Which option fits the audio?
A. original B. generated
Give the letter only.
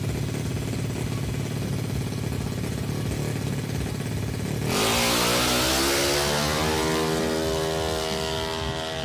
A